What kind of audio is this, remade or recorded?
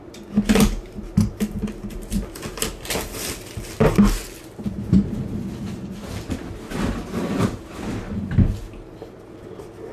recorded